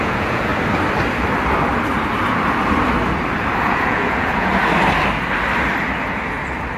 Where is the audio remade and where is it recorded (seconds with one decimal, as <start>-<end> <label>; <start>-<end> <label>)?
0.0-0.5 remade; 0.5-3.6 recorded; 3.6-4.5 remade; 4.5-6.8 recorded